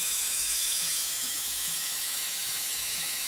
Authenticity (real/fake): fake